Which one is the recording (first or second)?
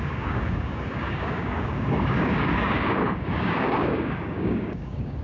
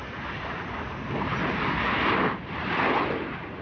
second